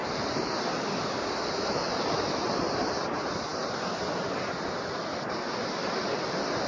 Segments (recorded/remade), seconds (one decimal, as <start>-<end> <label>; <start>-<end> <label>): 0.0-6.7 recorded